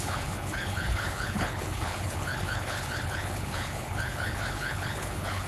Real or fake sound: fake